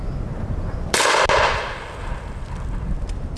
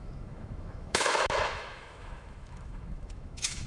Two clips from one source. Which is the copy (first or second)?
second